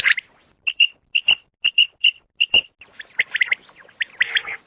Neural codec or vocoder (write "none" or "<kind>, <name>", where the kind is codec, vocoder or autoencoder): none